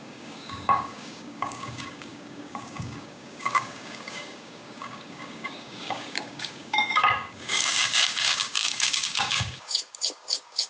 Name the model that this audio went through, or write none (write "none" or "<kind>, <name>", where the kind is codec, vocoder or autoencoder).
codec, DAC